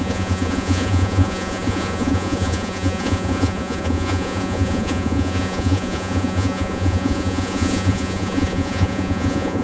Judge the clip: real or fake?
fake